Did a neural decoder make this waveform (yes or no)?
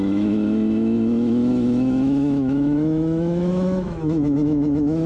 yes